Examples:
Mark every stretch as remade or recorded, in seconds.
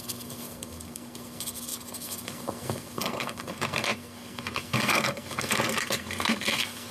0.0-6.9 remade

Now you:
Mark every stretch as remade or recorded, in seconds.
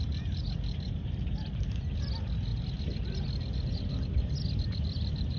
0.0-5.4 recorded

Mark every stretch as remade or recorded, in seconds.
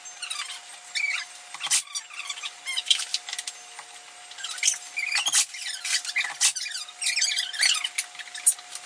0.0-8.9 recorded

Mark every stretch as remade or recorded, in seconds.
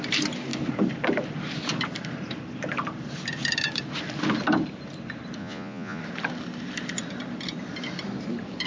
0.0-5.4 recorded; 5.4-6.0 remade; 6.0-8.7 recorded